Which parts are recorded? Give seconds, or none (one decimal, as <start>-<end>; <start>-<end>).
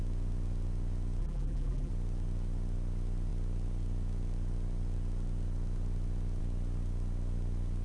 0.0-1.2; 1.9-7.8